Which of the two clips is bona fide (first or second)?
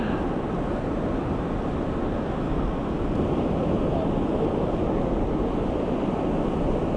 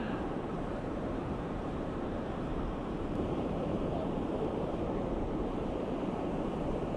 first